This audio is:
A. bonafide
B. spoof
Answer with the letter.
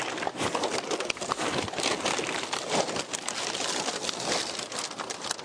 A